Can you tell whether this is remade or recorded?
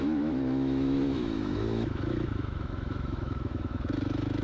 remade